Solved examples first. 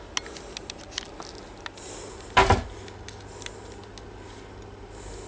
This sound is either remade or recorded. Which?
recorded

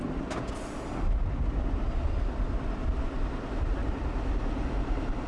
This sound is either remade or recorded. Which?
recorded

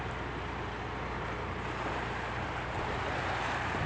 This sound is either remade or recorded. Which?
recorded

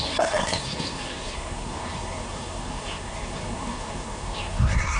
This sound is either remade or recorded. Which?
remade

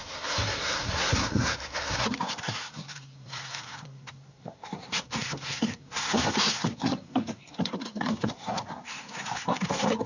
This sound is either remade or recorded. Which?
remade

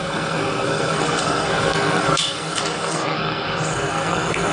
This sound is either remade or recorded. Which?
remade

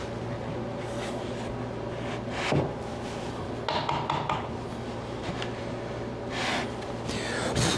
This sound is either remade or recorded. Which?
recorded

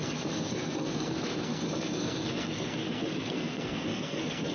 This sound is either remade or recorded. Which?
remade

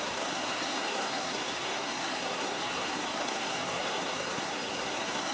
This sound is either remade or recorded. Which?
remade